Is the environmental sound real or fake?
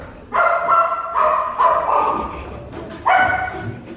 real